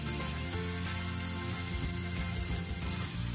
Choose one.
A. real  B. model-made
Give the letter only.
A